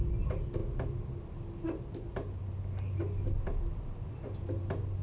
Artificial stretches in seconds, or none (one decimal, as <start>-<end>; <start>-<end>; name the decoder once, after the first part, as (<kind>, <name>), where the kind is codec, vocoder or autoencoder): none